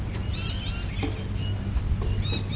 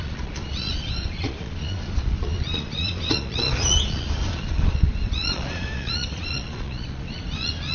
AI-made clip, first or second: second